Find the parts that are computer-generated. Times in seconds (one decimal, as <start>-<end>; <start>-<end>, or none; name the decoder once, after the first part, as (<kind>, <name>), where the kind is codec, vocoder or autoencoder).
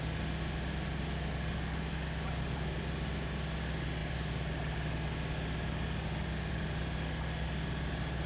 none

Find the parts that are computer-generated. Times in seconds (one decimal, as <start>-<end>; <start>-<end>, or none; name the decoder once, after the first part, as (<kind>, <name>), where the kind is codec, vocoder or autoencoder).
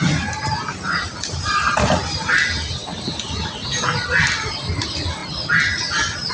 none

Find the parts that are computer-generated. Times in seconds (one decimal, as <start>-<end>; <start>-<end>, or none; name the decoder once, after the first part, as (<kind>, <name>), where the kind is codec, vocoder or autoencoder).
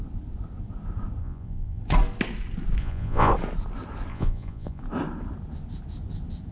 1.2-1.8 (vocoder, Vocos); 2.8-3.3; 4.1-4.8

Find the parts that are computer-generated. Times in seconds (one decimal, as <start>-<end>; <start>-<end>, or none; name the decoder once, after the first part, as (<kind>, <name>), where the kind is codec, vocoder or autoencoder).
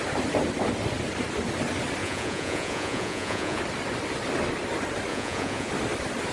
2.0-3.6 (vocoder, Vocos); 5.1-5.7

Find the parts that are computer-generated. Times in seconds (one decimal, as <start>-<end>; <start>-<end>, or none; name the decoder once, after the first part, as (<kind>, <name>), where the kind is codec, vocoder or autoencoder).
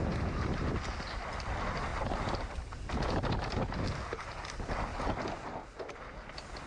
none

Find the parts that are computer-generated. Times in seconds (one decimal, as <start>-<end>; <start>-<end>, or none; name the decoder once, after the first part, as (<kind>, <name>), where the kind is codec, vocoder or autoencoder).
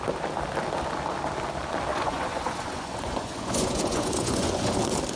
1.9-4.8 (vocoder, Vocos)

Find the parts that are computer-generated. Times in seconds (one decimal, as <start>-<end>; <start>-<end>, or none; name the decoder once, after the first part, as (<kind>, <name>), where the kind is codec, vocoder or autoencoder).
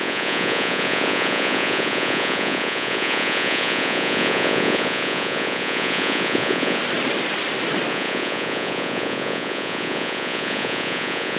0.0-6.8 (vocoder, Vocos); 7.9-11.4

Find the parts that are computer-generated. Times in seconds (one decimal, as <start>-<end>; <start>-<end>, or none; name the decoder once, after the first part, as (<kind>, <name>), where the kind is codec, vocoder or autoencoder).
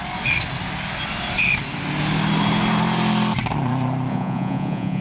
4.1-5.0 (vocoder, Vocos)